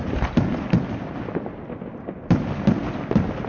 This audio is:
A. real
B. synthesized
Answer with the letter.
A